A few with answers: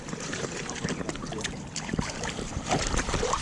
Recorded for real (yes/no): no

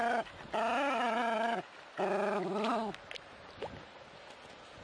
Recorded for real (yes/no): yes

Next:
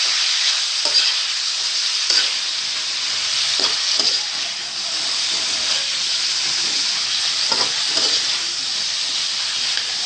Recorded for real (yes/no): yes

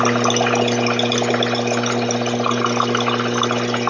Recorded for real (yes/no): yes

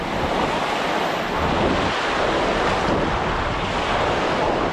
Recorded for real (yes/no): yes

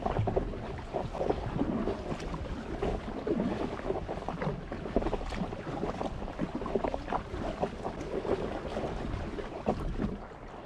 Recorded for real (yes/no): yes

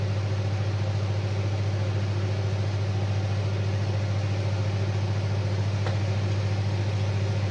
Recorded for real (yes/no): yes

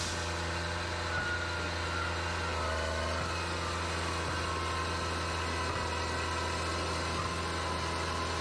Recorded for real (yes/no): yes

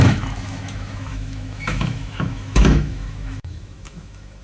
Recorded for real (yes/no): no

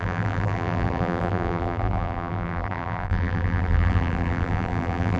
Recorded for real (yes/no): no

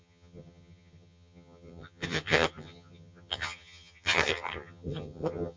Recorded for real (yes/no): no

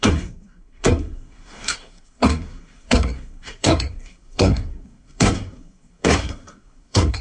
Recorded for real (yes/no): no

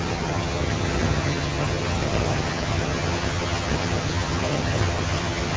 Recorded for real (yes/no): no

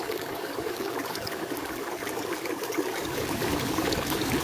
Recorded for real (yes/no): no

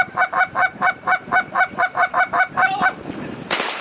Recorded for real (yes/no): no